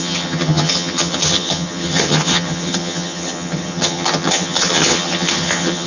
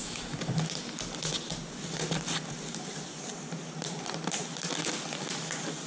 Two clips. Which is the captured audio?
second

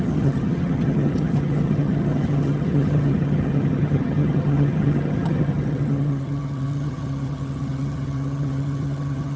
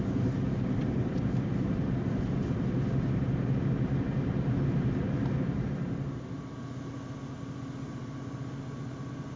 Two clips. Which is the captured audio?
second